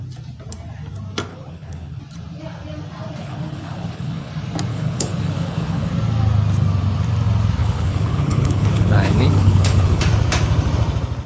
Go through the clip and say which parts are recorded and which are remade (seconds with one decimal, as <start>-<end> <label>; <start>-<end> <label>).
0.0-1.3 recorded; 1.3-2.0 remade; 2.0-3.2 recorded; 3.2-4.3 remade; 4.3-4.7 recorded; 4.7-5.9 remade; 5.9-7.6 recorded; 7.6-10.0 remade; 10.0-11.3 recorded